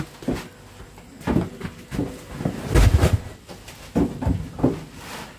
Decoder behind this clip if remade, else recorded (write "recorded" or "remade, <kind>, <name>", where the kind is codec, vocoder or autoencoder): recorded